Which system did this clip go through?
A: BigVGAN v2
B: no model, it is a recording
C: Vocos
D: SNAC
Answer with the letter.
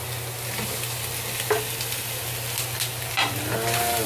B